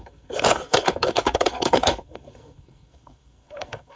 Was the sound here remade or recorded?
remade